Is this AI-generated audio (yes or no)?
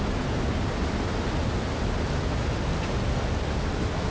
no